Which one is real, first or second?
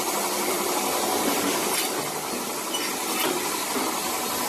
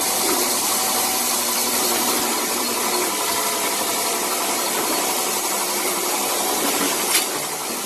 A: first